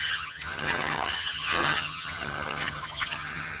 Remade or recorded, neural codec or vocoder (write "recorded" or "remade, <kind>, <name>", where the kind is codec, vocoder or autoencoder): remade, vocoder, HiFi-GAN